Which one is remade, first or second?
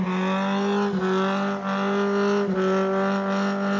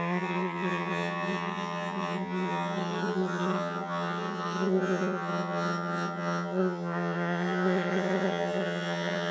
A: second